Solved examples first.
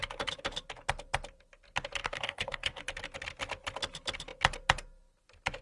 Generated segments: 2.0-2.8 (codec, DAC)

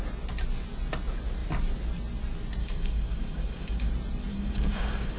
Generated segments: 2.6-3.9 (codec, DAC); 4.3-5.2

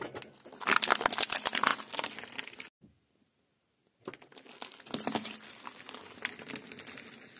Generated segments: none